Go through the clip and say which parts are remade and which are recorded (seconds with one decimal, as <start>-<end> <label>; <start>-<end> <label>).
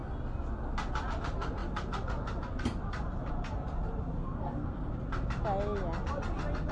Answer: 0.0-4.2 recorded; 4.2-4.9 remade; 4.9-6.7 recorded